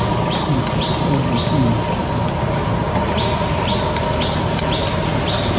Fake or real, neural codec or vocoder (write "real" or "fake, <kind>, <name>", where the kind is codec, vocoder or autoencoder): real